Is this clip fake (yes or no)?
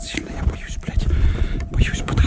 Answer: no